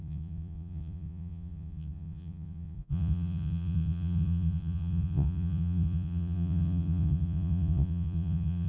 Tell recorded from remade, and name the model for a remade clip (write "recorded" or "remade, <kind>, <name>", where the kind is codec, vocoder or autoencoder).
remade, vocoder, Vocos